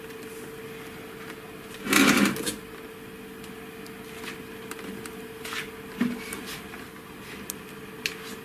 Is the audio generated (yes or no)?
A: no